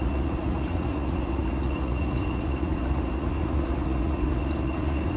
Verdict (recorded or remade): remade